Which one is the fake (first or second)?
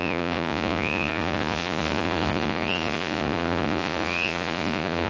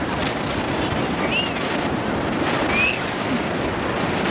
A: first